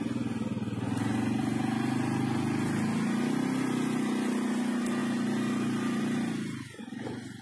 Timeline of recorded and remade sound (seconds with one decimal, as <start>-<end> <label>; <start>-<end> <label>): 0.0-7.4 recorded